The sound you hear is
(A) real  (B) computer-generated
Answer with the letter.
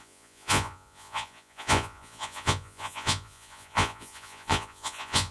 B